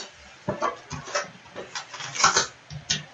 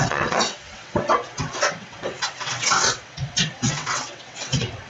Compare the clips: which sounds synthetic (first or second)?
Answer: second